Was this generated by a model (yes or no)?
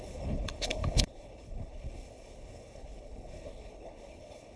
yes